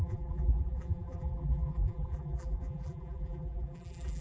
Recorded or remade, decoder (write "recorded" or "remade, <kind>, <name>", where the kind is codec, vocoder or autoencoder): remade, vocoder, BigVGAN v2